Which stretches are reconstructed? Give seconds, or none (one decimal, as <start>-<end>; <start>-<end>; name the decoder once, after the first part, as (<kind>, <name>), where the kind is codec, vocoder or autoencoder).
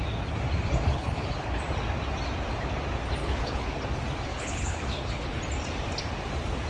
0.9-1.6 (codec, HILCodec); 3.2-3.8; 4.3-5.4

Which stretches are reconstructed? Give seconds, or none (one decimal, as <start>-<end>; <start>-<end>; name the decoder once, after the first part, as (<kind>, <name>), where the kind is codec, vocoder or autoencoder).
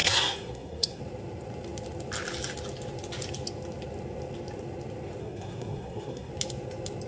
0.0-1.0 (codec, SNAC); 5.2-6.3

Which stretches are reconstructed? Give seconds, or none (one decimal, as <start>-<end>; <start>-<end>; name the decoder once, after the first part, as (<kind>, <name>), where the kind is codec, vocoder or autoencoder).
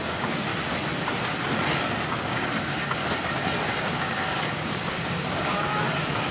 0.0-0.5 (codec, DAC); 2.1-3.0; 3.8-6.3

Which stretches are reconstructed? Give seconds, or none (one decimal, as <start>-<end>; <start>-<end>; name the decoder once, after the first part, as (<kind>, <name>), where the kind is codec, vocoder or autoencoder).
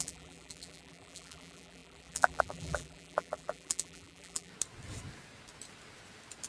0.0-4.5 (vocoder, BigVGAN v2)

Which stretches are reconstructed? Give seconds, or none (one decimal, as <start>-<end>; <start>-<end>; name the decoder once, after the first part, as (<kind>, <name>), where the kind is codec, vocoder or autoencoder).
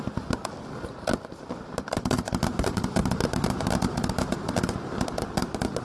1.1-4.6 (vocoder, BigVGAN v2)